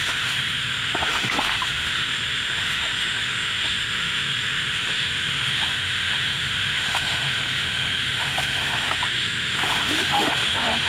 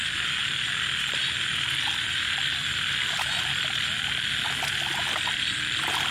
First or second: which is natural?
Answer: second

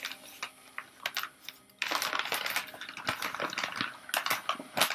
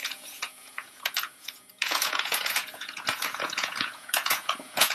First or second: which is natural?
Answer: first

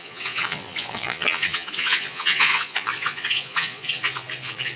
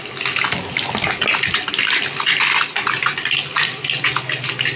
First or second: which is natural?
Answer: second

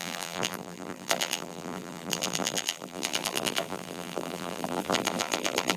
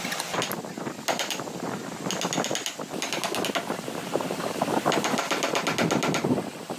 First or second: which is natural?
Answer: second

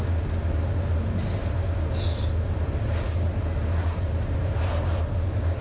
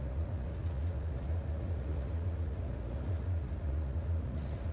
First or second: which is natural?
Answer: first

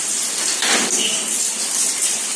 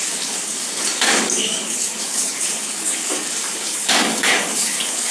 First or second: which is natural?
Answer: first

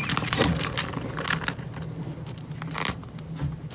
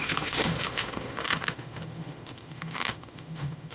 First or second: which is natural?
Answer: first